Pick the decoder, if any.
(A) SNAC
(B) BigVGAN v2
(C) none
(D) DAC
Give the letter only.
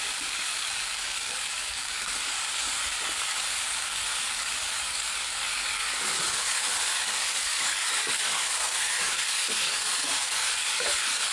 D